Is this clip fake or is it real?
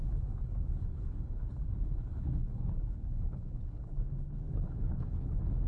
fake